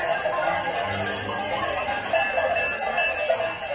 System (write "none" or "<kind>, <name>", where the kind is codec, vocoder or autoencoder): none